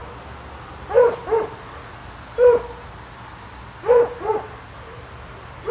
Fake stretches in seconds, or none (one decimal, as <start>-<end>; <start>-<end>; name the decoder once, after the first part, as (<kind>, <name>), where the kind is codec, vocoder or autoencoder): none